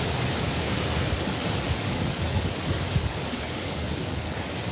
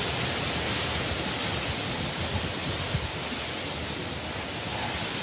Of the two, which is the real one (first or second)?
second